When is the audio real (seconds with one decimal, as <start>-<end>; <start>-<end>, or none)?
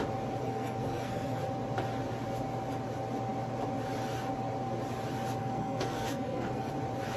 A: 0.0-0.4; 1.4-5.4; 6.7-7.2